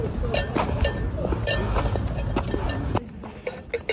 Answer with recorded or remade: recorded